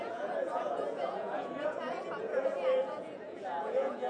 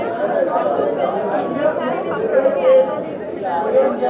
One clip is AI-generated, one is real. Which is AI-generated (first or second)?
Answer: first